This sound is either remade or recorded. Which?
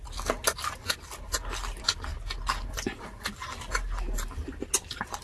recorded